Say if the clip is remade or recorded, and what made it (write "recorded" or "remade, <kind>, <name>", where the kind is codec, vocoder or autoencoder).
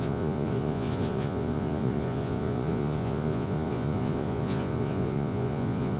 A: remade, vocoder, Vocos